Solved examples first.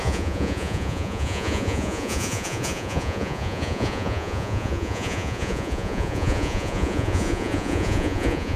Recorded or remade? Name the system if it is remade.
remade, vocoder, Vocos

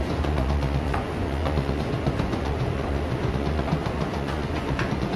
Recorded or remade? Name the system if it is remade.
remade, vocoder, Vocos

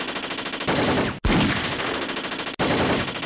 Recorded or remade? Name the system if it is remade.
recorded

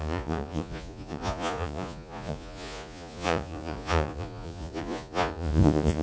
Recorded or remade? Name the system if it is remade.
remade, vocoder, Vocos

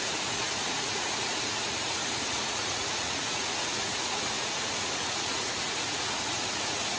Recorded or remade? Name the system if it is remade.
remade, vocoder, Vocos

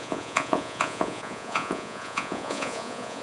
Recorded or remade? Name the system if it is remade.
remade, vocoder, Vocos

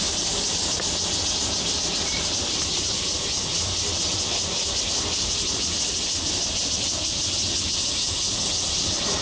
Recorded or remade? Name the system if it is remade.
recorded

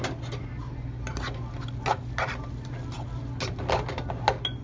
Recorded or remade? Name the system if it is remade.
recorded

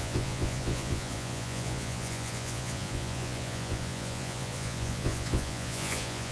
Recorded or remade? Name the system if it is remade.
remade, vocoder, Vocos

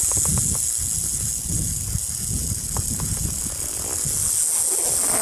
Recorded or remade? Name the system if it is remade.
recorded